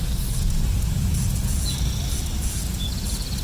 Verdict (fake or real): real